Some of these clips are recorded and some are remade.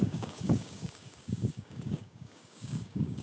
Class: remade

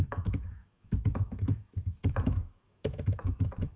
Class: remade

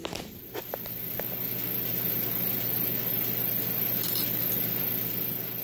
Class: recorded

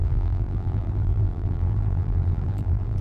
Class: remade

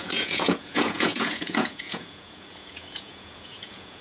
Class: remade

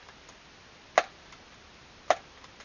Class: recorded